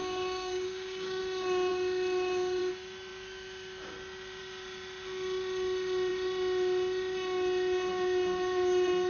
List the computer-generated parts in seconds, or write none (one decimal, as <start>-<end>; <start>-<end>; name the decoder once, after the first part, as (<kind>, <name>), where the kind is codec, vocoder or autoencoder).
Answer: 0.0-1.2 (codec, DAC)